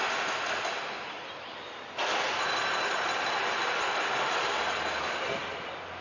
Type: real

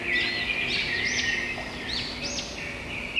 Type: real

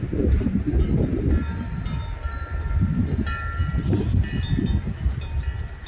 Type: real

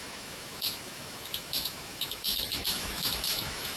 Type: fake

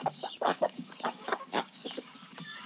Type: fake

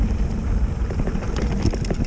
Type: real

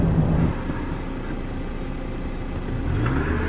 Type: real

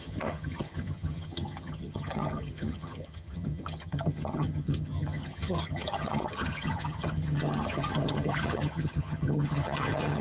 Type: fake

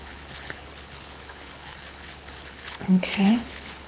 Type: fake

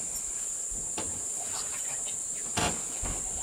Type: real